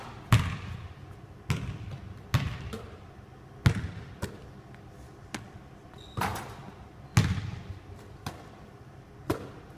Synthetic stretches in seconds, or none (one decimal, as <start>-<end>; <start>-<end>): none